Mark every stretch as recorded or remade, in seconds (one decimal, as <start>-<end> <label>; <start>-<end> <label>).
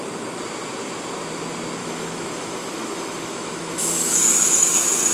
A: 0.0-1.8 recorded; 1.8-5.1 remade